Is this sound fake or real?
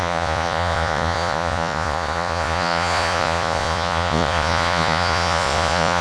fake